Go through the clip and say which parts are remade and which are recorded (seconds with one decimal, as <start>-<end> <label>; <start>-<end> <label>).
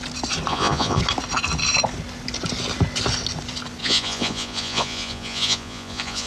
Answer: 0.0-0.5 recorded; 0.5-1.0 remade; 1.0-3.8 recorded; 3.8-6.3 remade